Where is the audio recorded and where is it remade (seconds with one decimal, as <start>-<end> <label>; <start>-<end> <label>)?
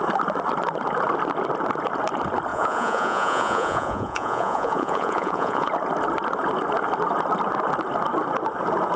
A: 0.0-2.5 recorded; 2.5-5.7 remade; 5.7-9.0 recorded